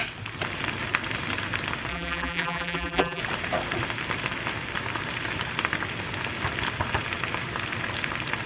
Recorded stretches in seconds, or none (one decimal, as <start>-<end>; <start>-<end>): 0.0-1.9; 3.2-8.5